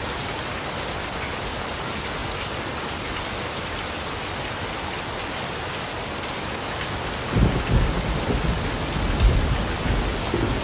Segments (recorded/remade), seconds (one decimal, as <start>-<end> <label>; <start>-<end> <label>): 0.0-10.6 recorded